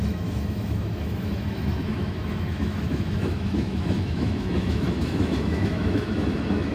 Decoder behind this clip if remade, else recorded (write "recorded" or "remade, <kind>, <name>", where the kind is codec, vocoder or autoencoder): remade, autoencoder, DAC-VAE